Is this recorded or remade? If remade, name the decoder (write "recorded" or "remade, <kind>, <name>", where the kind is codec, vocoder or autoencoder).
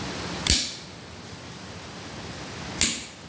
recorded